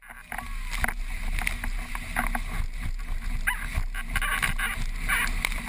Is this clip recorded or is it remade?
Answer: recorded